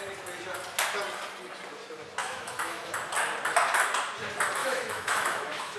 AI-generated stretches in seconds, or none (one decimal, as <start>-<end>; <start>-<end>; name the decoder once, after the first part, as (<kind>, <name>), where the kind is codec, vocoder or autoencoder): 2.2-2.9 (autoencoder, DAC-VAE); 4.6-5.8

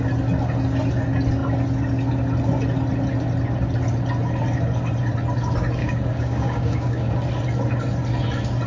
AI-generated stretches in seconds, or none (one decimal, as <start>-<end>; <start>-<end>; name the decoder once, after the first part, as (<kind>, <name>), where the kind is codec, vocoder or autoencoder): 5.8-7.1 (codec, DAC)

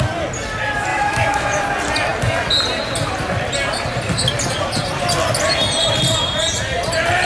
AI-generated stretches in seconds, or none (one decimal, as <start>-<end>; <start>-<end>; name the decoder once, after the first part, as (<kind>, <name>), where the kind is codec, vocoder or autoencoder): 0.9-1.6 (autoencoder, DAC-VAE)

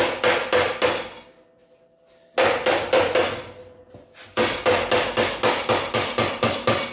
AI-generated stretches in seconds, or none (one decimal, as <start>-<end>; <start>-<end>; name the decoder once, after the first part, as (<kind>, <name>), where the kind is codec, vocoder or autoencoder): none

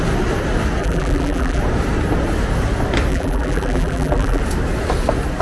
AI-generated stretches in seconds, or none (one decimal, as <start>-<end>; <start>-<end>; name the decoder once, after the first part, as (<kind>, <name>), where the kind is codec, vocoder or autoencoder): 0.8-1.6 (vocoder, BigVGAN v2); 3.1-4.4

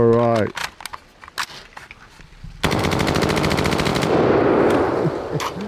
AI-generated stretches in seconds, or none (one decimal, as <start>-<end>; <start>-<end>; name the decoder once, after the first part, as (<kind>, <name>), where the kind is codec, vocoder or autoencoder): none

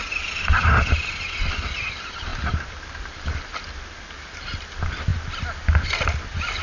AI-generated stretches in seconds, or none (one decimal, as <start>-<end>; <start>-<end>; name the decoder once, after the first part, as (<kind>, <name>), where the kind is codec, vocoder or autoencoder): none